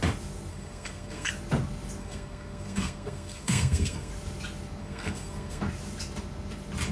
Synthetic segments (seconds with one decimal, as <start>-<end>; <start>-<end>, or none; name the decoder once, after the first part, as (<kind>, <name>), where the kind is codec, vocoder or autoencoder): 0.5-1.3 (codec, SNAC); 2.0-4.1; 4.8-5.6